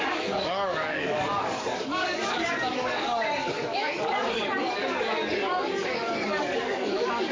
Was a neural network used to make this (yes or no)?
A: yes